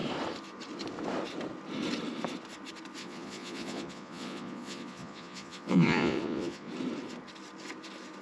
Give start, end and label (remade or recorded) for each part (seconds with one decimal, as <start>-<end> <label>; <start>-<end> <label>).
0.0-3.0 recorded; 3.0-6.7 remade; 6.7-8.2 recorded